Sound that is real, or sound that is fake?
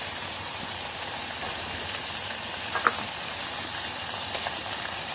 real